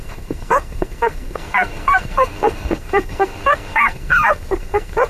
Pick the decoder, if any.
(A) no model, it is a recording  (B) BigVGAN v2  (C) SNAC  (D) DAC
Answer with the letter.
C